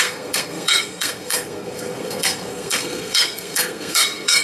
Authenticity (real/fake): fake